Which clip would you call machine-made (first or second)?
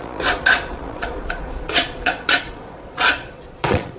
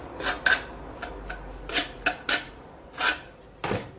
first